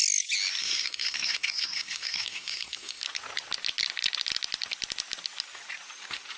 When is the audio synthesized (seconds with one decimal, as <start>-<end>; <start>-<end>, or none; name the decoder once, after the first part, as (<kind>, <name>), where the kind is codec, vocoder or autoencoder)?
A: 0.6-3.0 (codec, SNAC)